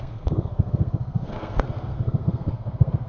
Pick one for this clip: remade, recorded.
remade